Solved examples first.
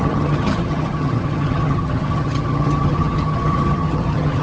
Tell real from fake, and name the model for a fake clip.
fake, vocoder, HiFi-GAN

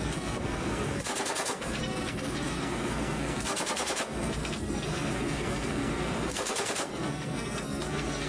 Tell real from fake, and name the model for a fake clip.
fake, codec, SNAC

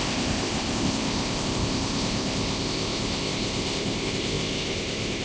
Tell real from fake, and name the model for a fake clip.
fake, codec, ZipCodec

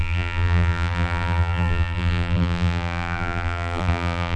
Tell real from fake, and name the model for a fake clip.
fake, vocoder, BigVGAN v2